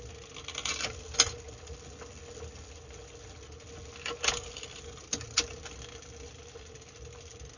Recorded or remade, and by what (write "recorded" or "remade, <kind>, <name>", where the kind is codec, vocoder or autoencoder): recorded